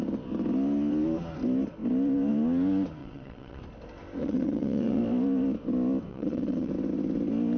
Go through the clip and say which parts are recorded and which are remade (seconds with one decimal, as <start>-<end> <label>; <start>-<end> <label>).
0.0-3.0 recorded; 3.0-3.6 remade; 3.6-4.2 recorded; 4.2-5.0 remade; 5.0-6.1 recorded; 6.1-6.7 remade; 6.7-7.6 recorded